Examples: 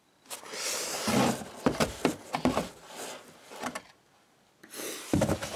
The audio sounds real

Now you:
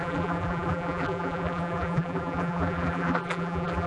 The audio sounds fake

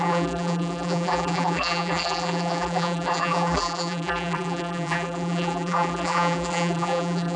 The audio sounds fake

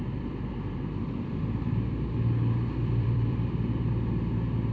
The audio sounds fake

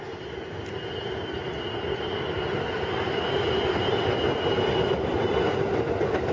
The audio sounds real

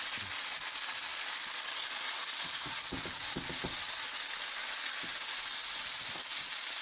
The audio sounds real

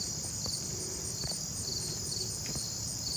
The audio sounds fake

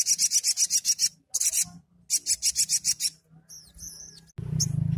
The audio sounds real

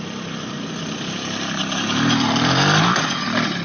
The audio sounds fake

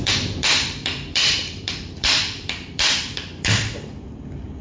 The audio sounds fake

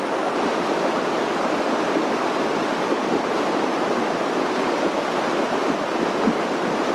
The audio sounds real